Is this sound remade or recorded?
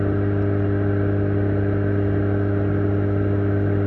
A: recorded